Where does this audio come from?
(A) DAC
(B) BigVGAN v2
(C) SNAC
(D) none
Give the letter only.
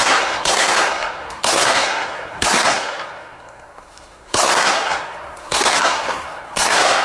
C